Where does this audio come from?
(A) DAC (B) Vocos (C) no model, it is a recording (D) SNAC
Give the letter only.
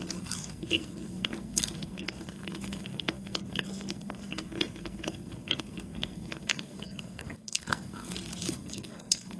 D